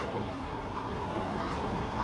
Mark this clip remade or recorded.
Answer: remade